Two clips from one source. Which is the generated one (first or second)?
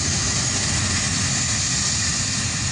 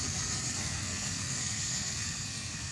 second